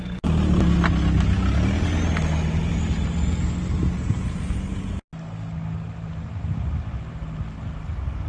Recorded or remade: recorded